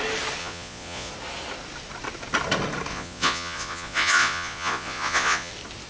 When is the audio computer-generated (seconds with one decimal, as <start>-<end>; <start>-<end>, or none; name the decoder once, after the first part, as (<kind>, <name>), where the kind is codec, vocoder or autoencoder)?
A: 0.4-1.1 (vocoder, Vocos); 2.9-5.5